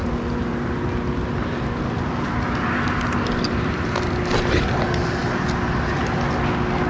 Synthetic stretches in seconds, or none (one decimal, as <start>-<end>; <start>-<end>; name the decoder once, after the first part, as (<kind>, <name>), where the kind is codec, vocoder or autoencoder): none